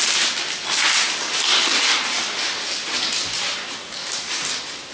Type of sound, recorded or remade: recorded